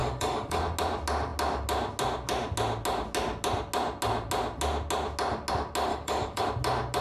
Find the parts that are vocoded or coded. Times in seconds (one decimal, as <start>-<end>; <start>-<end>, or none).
0.0-0.6; 5.9-6.4